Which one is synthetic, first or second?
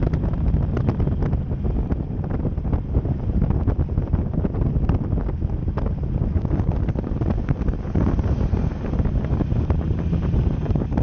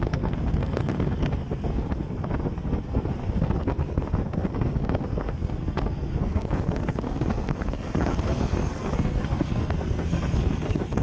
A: second